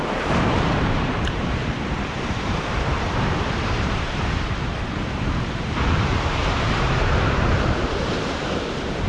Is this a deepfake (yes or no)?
yes